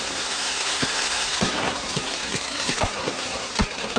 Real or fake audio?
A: fake